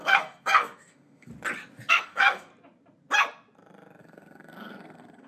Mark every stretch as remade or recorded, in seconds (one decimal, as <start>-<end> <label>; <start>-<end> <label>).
0.0-1.3 remade; 1.3-1.9 recorded; 1.9-2.5 remade; 2.5-4.0 recorded; 4.0-5.3 remade